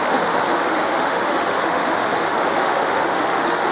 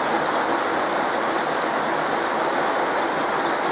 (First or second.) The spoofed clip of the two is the first